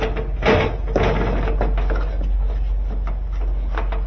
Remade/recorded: recorded